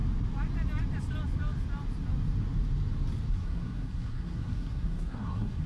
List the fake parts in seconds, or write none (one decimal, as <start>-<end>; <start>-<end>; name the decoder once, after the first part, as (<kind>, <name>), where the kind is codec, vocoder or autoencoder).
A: 3.3-5.7 (codec, SNAC)